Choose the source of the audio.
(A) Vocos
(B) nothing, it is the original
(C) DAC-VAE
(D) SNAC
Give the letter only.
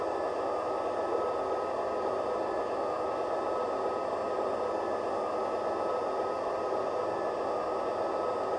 B